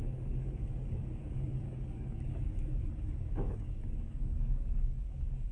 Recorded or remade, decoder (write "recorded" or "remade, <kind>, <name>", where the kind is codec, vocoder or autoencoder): remade, codec, DAC